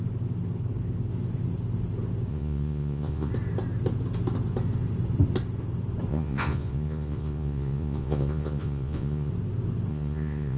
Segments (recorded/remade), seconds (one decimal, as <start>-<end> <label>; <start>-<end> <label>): 0.0-2.3 recorded; 2.3-3.3 remade; 3.3-6.1 recorded; 6.1-9.3 remade; 9.3-9.9 recorded; 9.9-10.6 remade